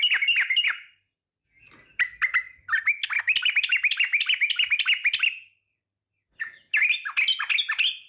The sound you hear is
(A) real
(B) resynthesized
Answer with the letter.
A